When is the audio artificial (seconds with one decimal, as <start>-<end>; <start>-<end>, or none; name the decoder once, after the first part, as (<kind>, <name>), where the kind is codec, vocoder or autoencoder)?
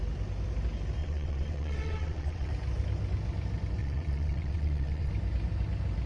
1.0-2.5 (vocoder, WaveNeXt); 3.8-5.1